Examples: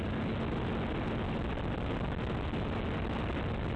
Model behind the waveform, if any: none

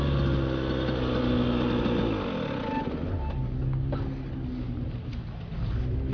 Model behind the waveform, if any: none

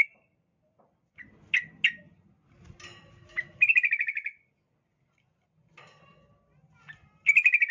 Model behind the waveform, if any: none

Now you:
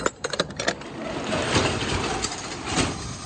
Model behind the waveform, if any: none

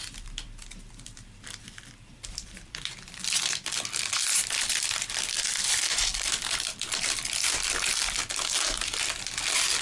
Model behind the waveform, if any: vocoder, BigVGAN v2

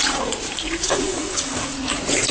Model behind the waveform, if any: vocoder, Vocos